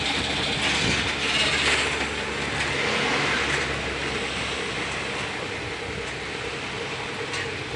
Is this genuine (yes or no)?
yes